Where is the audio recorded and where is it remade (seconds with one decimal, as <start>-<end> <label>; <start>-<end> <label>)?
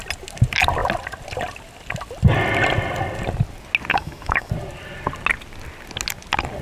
0.0-3.9 recorded; 3.9-4.5 remade; 4.5-6.6 recorded